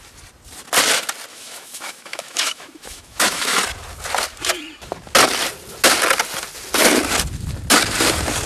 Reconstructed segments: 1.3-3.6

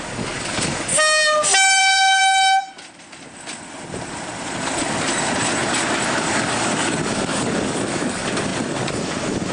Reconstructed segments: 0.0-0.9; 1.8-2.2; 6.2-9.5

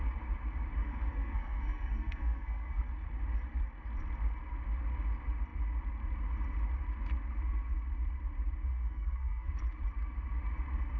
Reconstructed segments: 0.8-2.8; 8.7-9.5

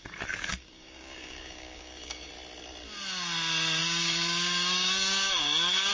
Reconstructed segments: 0.5-2.3; 3.8-5.9